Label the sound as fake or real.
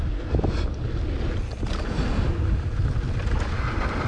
real